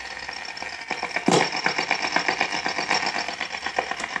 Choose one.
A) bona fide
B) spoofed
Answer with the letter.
A